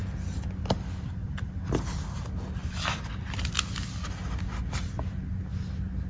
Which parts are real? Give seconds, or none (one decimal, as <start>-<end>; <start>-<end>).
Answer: 0.0-2.6; 3.4-6.1